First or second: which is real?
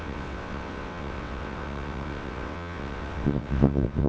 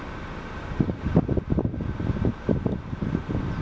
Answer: second